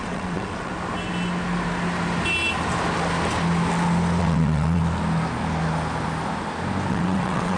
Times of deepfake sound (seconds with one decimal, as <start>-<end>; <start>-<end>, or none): 0.0-0.7; 4.2-4.8; 6.9-7.6